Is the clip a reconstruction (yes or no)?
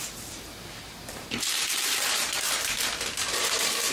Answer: yes